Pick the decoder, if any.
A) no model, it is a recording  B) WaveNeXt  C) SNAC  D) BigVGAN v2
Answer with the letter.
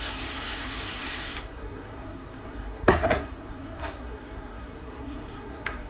C